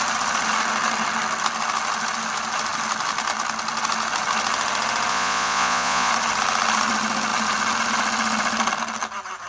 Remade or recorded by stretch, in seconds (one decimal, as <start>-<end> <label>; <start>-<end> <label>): 0.0-5.1 recorded; 5.1-6.1 remade; 6.1-9.5 recorded